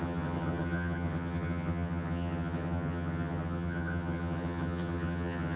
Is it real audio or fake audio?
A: fake